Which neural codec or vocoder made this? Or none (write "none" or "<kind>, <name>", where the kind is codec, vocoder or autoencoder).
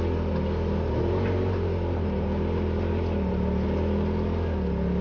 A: none